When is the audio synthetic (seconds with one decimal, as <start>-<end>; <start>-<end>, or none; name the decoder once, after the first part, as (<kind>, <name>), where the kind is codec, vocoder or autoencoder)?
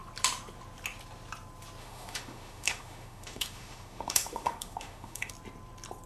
1.8-5.3 (autoencoder, DAC-VAE)